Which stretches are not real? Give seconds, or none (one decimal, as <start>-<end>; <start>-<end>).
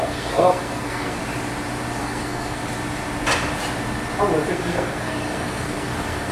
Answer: 0.0-1.2; 2.0-2.6; 4.5-6.3